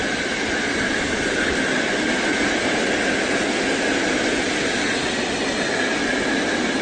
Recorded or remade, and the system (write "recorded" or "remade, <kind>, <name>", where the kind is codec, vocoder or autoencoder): recorded